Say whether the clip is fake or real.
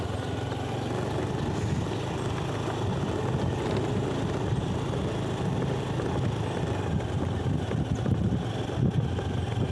real